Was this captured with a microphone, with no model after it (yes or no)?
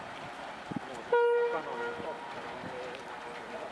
yes